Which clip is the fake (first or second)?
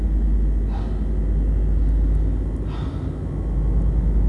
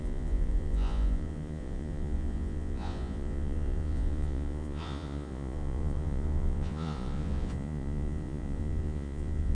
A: second